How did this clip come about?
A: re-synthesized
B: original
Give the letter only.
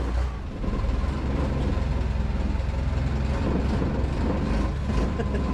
B